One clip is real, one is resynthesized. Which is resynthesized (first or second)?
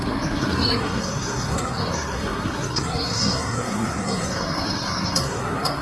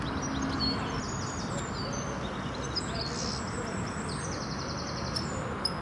first